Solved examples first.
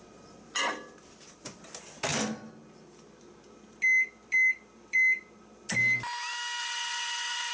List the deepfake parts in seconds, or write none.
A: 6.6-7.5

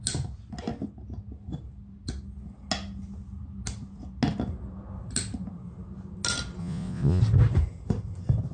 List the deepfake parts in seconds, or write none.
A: 6.6-7.2

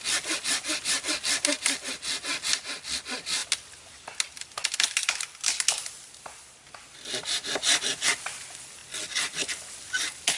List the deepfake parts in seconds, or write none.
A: none

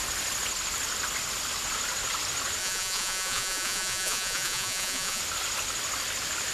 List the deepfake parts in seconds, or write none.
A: 2.6-5.2

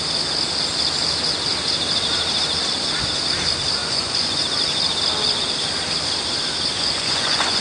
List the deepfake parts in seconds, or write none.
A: 3.8-4.4; 6.7-7.6

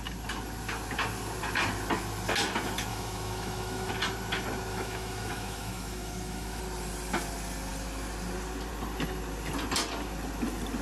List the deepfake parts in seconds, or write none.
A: 2.9-3.9; 4.7-6.6

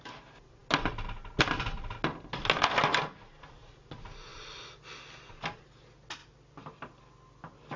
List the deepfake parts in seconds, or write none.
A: 4.3-4.9; 6.2-6.8